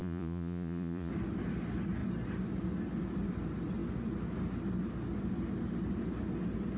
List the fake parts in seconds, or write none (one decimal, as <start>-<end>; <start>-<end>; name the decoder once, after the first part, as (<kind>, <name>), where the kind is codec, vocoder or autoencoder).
0.0-1.1 (vocoder, Vocos)